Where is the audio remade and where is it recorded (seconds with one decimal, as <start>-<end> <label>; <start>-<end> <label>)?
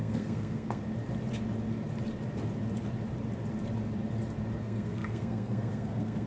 0.0-0.8 remade; 0.8-4.6 recorded; 4.6-6.3 remade